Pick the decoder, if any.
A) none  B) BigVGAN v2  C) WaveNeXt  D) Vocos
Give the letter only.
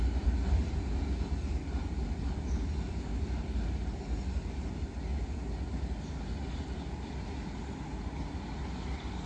A